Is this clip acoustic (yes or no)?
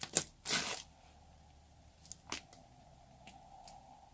yes